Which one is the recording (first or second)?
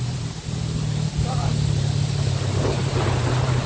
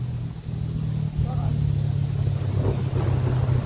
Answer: second